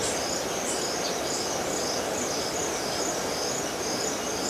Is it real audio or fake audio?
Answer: real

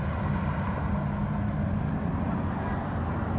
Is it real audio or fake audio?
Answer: real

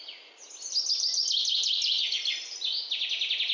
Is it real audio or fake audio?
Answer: real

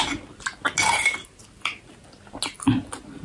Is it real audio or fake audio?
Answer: real